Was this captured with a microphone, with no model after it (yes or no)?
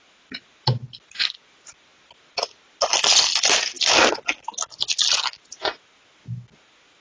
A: yes